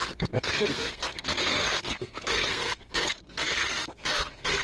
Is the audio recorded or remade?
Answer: remade